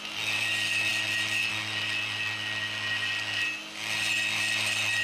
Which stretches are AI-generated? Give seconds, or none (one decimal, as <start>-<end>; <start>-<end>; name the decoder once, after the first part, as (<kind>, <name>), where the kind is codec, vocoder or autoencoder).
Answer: none